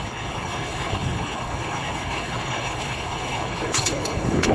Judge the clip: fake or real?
fake